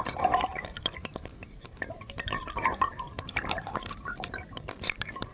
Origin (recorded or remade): remade